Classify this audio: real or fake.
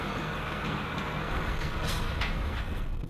fake